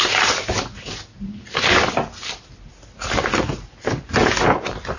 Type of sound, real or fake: real